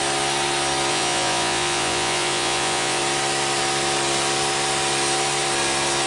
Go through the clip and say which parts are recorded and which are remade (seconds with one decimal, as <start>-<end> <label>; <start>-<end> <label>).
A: 0.0-0.9 recorded; 0.9-3.0 remade; 3.0-6.1 recorded